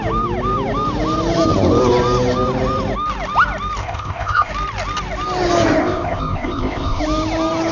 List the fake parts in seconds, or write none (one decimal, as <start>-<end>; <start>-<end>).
3.8-4.5; 5.8-7.0